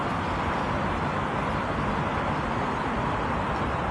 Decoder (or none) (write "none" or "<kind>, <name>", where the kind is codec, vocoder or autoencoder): none